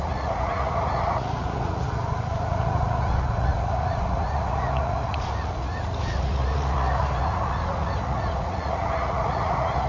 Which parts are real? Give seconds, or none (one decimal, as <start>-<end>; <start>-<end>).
none